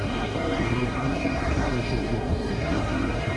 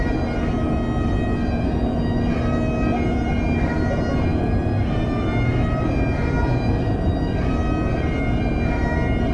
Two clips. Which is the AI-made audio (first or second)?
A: first